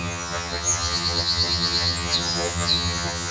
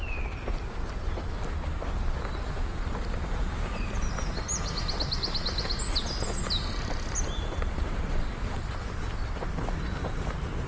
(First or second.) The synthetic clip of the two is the first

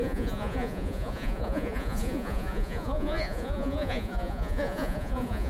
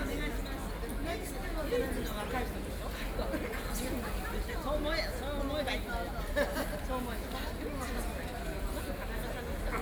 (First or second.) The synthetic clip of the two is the first